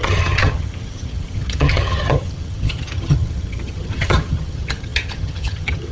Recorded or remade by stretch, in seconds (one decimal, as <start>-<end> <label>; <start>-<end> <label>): 0.0-5.9 remade